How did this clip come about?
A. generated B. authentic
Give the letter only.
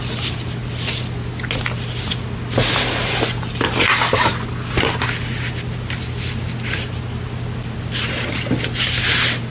B